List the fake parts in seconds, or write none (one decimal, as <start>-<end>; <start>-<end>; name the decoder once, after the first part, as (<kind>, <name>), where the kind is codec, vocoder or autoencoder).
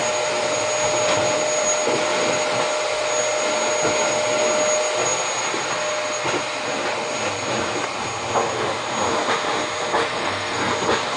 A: 10.1-10.7 (codec, SNAC)